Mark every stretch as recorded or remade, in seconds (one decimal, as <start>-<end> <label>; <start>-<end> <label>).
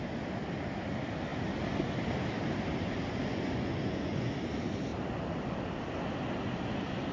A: 0.0-3.3 recorded; 3.3-4.3 remade; 4.3-7.1 recorded